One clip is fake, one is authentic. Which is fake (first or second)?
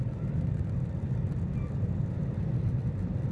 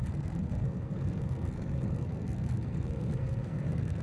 second